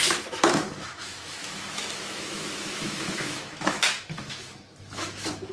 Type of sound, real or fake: fake